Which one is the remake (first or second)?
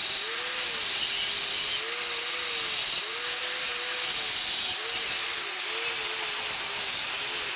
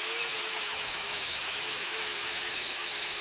second